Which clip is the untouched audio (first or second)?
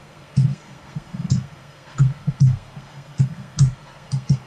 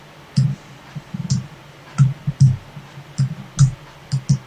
second